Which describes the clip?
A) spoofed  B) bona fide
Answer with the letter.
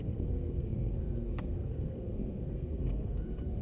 A